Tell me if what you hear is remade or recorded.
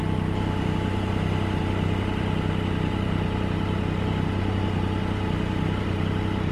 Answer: recorded